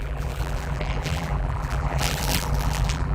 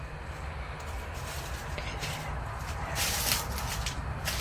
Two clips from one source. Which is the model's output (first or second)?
first